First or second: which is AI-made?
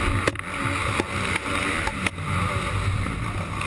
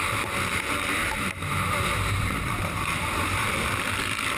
second